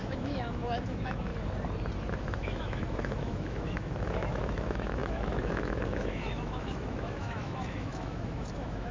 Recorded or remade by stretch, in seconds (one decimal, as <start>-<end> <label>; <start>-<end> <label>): 0.0-1.3 remade; 1.3-2.4 recorded; 2.4-8.9 remade